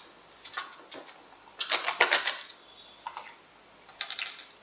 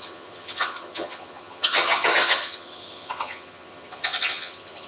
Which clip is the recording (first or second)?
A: first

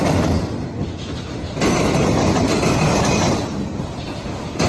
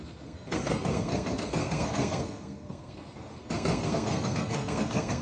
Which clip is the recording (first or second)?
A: first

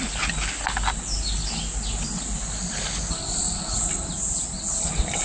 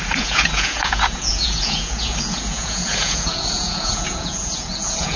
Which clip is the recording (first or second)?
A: first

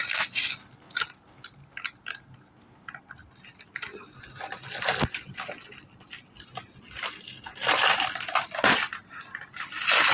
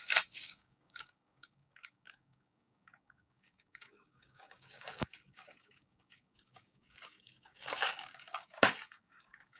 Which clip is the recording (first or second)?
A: first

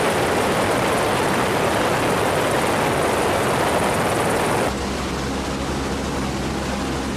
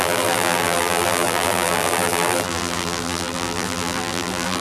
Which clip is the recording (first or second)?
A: first